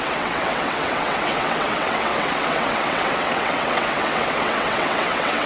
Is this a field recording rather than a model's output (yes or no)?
no